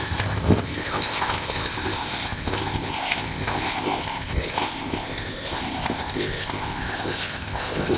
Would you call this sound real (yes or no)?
no